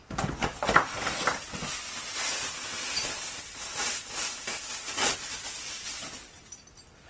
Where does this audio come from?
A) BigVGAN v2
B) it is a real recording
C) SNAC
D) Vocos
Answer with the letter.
B